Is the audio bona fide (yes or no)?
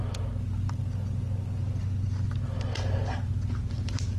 yes